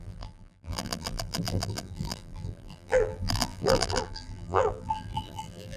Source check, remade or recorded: remade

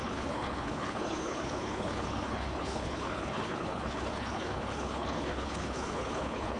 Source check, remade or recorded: remade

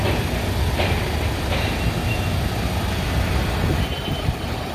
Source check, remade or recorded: recorded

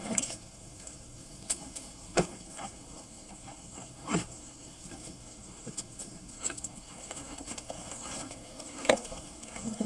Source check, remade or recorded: remade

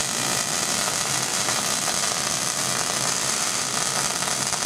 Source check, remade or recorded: remade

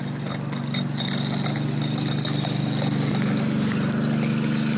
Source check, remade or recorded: recorded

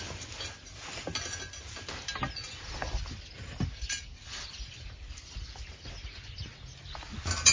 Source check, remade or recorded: recorded